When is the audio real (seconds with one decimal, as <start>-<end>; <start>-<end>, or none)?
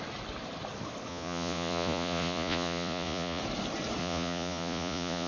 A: 0.0-1.1; 3.4-4.0